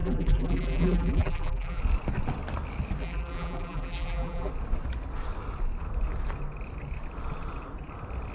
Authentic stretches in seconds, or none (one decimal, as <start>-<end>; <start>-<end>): 1.8-3.0; 4.5-8.3